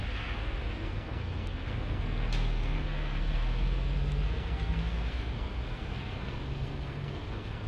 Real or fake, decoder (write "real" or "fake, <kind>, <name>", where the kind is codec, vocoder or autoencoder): fake, codec, SNAC